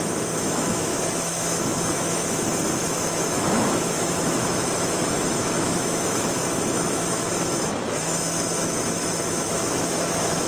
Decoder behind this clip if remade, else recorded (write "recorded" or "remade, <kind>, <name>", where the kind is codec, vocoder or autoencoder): remade, autoencoder, DAC-VAE